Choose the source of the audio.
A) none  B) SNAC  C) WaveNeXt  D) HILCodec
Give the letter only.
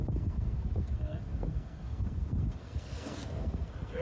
B